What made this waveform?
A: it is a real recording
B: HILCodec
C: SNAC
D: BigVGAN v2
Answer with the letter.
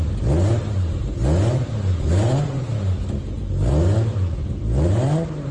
A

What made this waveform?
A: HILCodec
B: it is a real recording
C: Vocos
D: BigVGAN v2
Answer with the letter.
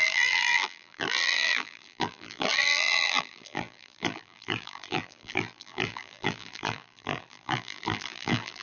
D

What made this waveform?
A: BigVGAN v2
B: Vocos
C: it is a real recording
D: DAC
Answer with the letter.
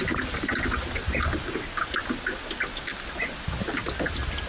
C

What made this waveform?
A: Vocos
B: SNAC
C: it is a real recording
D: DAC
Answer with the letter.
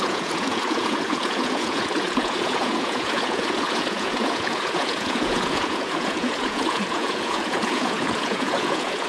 A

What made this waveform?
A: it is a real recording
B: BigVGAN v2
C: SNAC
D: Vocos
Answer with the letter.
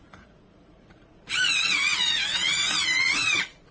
D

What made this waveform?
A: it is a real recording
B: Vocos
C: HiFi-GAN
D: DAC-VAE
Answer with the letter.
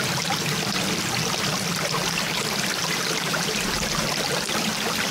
A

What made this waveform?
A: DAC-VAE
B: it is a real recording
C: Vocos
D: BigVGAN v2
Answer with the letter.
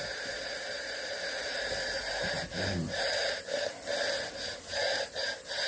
D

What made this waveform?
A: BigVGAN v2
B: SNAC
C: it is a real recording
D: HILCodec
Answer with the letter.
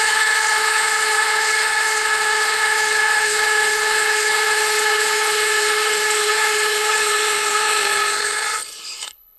D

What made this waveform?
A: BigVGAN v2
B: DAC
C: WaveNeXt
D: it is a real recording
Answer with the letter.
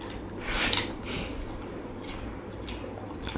D